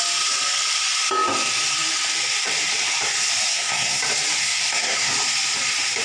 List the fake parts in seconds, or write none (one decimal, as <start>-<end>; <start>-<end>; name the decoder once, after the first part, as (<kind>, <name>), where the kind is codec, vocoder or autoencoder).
3.5-4.0 (codec, SNAC); 4.4-5.1